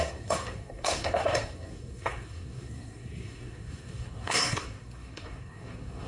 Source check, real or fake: fake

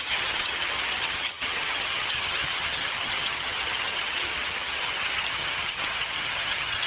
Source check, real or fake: fake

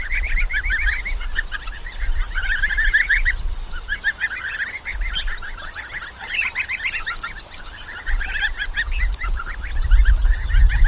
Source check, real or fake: real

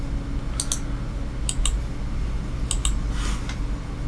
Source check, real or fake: real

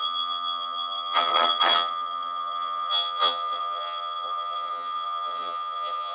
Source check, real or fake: fake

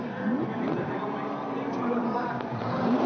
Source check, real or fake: fake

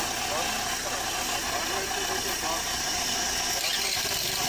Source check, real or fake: real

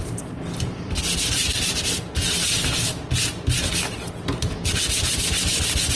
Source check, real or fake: real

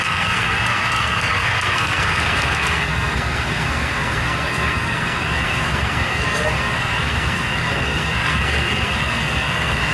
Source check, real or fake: fake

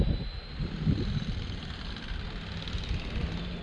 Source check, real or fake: real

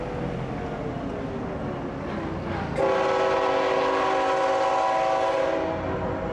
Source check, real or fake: real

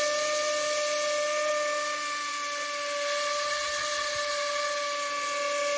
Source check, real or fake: real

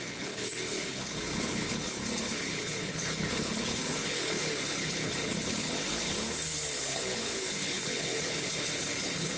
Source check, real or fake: fake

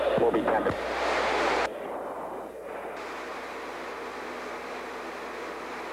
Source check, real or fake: real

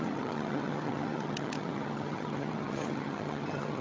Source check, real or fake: fake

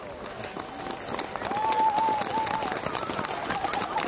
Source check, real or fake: real